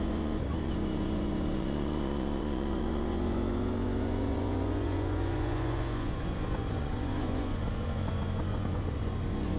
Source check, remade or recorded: remade